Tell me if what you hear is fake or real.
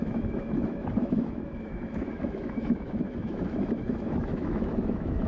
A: fake